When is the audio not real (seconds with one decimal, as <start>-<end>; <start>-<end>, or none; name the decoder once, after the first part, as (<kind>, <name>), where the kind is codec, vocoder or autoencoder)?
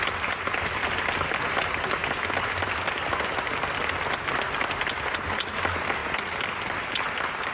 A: none